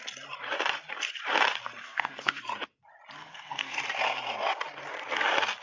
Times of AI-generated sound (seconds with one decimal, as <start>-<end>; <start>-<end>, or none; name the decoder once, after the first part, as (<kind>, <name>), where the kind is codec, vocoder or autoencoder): 1.8-2.4 (codec, SNAC); 3.2-3.8